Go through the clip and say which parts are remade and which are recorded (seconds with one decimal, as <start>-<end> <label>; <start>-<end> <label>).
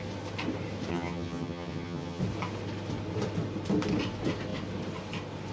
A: 0.0-0.9 recorded; 0.9-2.2 remade; 2.2-5.5 recorded